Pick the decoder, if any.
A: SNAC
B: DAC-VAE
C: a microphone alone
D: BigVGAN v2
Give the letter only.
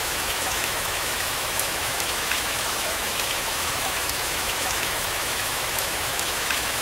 B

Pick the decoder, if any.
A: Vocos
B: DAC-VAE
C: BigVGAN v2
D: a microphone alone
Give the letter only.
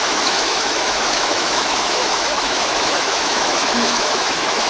B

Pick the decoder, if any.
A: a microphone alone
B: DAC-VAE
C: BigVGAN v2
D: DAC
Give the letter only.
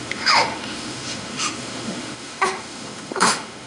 B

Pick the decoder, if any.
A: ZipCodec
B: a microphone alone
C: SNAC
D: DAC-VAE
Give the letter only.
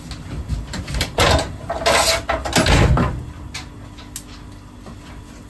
B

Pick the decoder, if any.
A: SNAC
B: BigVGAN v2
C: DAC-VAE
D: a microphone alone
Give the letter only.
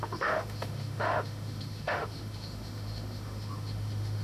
C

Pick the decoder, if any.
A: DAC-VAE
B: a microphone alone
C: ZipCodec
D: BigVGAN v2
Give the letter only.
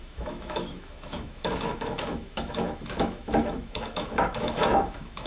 A